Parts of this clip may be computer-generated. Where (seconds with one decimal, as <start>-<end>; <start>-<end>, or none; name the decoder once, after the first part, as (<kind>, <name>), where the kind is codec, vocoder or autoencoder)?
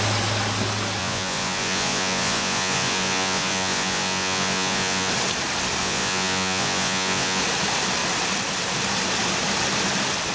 1.0-5.1 (vocoder, Vocos); 5.8-7.4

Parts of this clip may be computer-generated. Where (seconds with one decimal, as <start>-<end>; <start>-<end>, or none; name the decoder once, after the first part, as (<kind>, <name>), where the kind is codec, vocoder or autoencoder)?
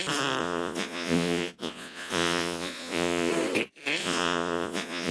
0.4-3.3 (vocoder, Vocos); 4.0-5.1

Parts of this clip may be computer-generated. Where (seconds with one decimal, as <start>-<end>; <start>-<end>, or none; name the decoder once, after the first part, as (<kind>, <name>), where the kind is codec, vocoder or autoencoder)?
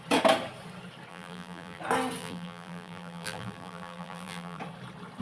1.1-1.8 (vocoder, BigVGAN v2); 2.2-4.6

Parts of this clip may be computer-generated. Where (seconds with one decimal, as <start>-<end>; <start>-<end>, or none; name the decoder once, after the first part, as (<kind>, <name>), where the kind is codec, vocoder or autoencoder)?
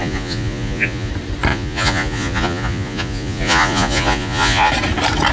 0.0-1.1 (vocoder, Vocos); 1.5-4.7